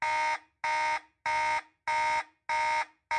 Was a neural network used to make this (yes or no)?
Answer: no